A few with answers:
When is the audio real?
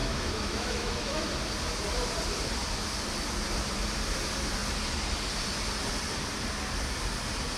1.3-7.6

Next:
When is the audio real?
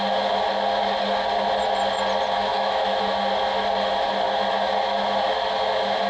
0.0-2.5; 3.0-6.1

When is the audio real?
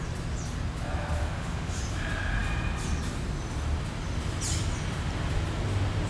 0.0-1.2; 1.8-6.1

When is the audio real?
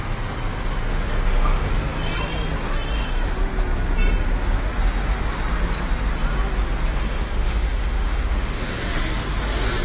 0.0-0.9; 1.7-7.3; 8.9-9.8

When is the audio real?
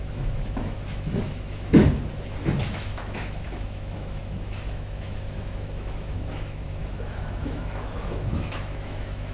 1.8-2.6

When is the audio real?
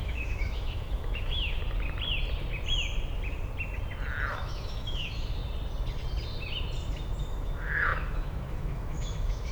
1.6-4.3; 5.4-7.2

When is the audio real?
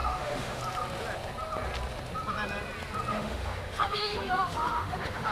0.6-3.1